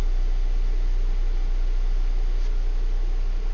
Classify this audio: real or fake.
real